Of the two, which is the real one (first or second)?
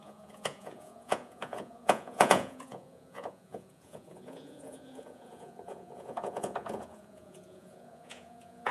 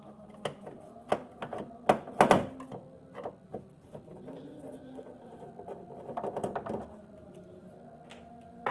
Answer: second